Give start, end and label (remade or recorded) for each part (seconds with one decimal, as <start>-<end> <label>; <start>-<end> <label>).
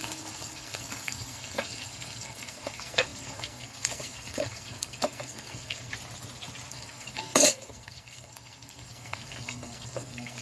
0.0-5.9 remade; 5.9-6.7 recorded; 6.7-10.4 remade